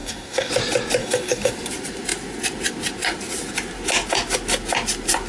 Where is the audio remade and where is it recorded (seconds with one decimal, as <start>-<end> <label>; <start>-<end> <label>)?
0.0-0.5 remade; 0.5-1.0 recorded; 1.0-1.5 remade; 1.5-5.3 recorded